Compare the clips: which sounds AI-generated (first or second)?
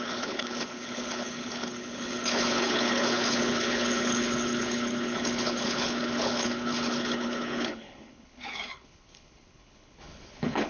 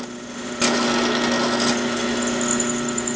first